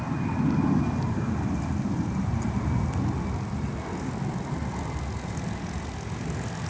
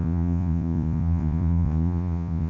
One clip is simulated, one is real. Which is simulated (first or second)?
second